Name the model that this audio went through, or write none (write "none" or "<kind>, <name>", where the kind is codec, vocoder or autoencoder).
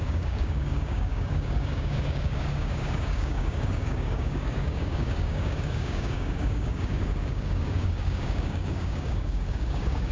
codec, DAC